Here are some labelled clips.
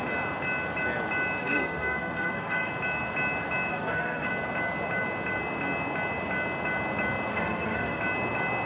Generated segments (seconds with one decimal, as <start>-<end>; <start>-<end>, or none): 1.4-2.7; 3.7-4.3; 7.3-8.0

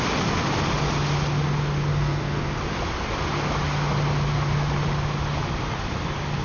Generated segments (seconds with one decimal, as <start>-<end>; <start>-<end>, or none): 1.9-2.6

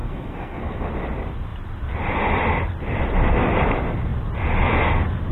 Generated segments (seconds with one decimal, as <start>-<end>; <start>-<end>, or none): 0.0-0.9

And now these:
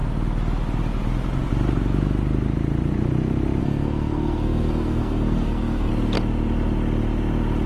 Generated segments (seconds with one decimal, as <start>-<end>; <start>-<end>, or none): 3.6-5.9

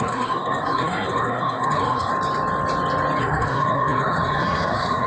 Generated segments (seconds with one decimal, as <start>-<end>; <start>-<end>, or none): 0.0-2.1; 3.2-5.1